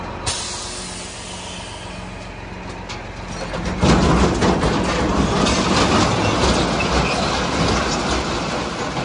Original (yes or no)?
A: yes